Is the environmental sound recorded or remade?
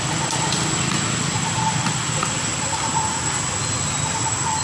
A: recorded